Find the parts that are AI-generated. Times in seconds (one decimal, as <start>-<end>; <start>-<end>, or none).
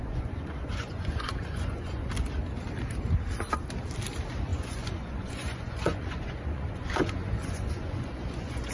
0.0-2.1; 4.5-8.7